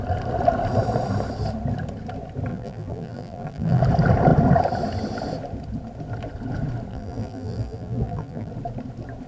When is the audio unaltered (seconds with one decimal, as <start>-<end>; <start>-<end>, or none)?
0.0-2.5; 3.8-6.9; 8.5-9.3